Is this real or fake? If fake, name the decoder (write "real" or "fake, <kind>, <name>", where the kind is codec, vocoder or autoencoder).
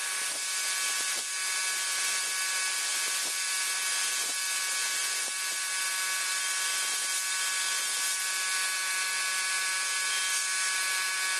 fake, vocoder, BigVGAN v2